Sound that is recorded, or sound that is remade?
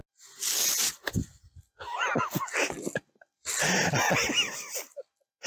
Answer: recorded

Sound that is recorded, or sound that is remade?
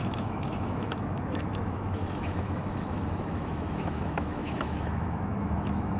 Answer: remade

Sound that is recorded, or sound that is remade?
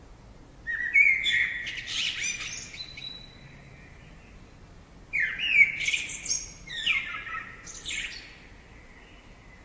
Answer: recorded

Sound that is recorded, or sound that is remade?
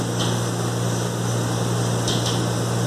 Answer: recorded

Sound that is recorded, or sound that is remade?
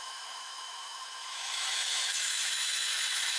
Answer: remade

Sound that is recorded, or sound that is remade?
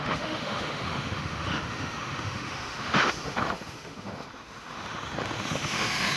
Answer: remade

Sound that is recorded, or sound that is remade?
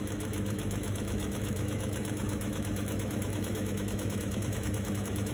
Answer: remade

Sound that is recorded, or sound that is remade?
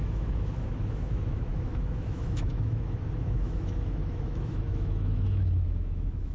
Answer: remade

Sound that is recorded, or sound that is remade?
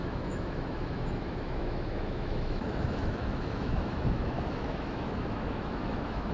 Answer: remade